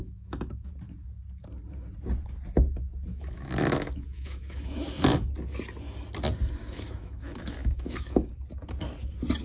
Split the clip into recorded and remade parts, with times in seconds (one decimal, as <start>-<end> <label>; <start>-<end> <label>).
0.0-0.7 remade; 0.7-3.1 recorded; 3.1-5.3 remade; 5.3-6.6 recorded; 6.6-8.3 remade; 8.3-9.4 recorded